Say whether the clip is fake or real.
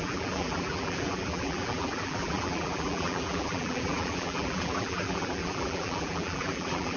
fake